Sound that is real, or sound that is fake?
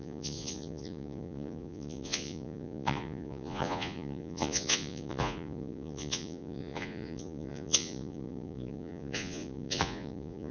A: fake